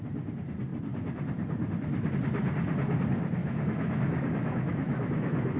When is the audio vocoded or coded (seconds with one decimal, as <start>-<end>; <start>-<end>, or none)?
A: 3.4-5.6